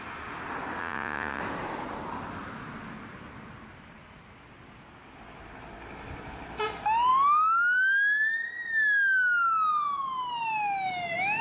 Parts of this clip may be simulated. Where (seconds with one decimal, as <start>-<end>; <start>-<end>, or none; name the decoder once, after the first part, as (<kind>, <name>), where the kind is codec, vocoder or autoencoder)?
0.8-1.4 (vocoder, Vocos)